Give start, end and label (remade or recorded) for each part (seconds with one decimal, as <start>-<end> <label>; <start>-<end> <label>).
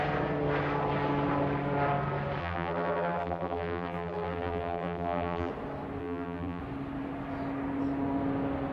0.0-2.4 recorded; 2.4-5.5 remade; 5.5-6.0 recorded; 6.0-6.6 remade; 6.6-8.7 recorded